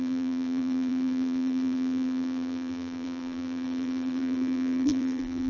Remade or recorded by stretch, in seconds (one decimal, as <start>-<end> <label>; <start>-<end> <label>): 0.0-5.5 remade